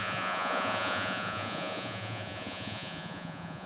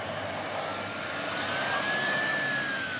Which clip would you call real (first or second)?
second